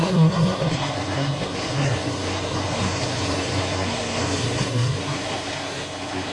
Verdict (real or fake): fake